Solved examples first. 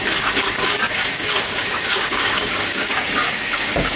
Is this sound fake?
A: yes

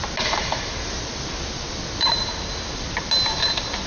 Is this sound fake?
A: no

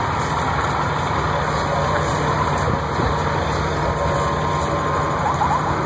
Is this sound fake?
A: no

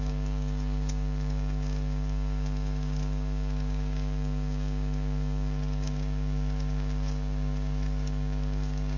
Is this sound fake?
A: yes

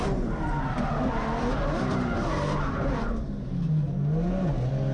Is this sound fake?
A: no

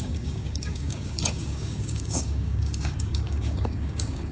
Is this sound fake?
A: yes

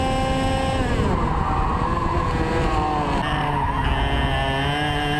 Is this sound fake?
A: no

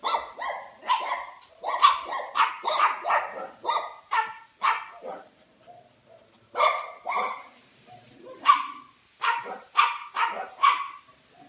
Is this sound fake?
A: no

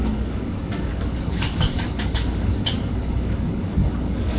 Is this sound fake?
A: yes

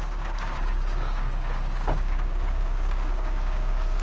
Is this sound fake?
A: yes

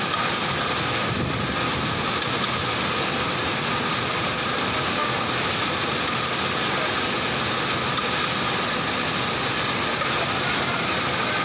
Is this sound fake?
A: no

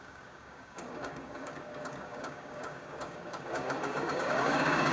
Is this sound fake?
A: yes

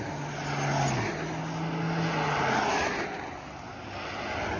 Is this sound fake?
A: no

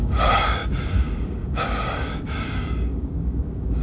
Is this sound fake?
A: yes